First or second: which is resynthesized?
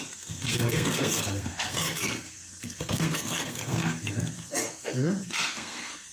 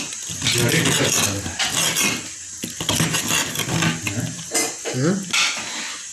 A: first